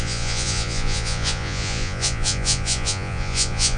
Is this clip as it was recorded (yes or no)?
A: no